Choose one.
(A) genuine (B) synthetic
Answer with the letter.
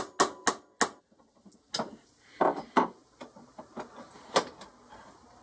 A